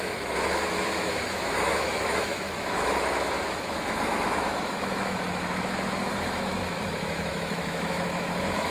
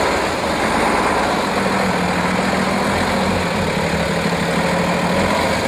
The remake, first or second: first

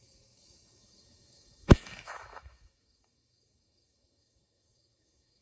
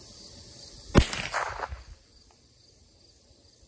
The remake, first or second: first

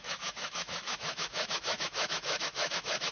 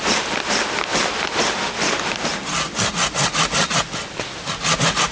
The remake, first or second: first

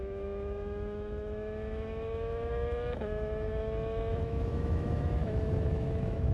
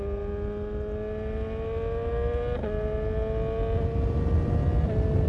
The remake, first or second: first